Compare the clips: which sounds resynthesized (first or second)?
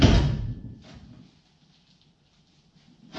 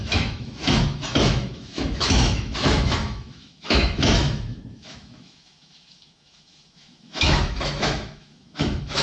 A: second